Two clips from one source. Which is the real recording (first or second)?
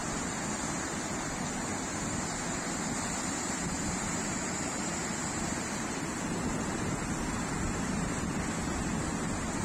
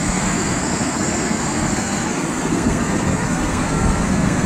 first